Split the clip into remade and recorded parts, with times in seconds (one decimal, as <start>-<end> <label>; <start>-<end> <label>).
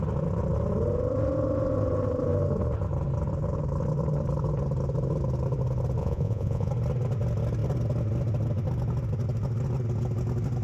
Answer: 0.0-6.0 recorded; 6.0-6.7 remade; 6.7-10.6 recorded